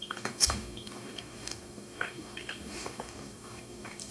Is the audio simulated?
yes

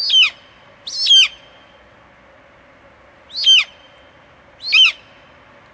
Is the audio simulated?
no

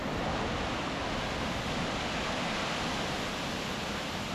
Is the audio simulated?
no